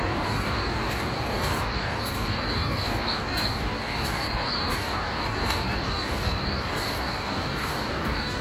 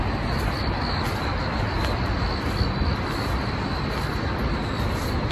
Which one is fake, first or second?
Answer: first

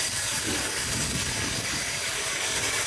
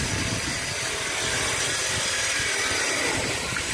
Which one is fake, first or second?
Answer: first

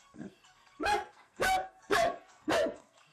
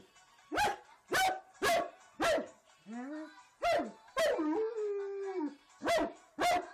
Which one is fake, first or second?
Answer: first